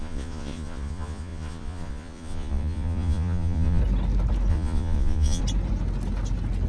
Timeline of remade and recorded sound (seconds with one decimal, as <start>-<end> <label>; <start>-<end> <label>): 0.0-3.8 remade; 3.8-4.5 recorded; 4.5-5.4 remade; 5.4-6.7 recorded